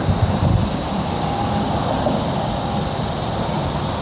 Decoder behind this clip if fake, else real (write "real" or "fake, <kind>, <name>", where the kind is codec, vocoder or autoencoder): real